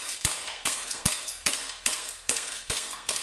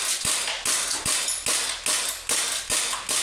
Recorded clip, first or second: second